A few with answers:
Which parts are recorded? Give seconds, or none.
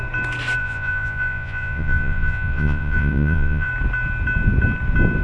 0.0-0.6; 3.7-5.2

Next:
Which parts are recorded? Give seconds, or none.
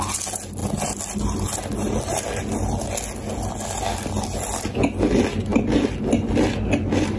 0.0-7.2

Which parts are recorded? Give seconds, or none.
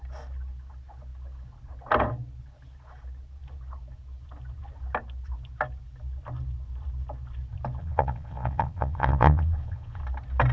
0.0-7.8; 10.0-10.5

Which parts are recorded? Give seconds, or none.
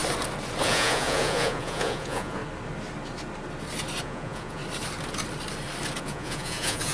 0.0-0.6; 2.4-4.0; 4.6-6.0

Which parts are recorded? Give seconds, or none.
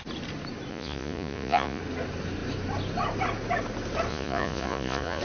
0.0-0.7; 1.8-4.1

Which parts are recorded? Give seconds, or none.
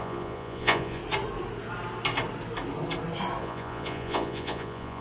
1.0-3.4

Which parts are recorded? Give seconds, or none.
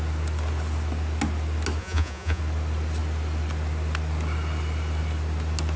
0.0-1.8; 2.4-5.8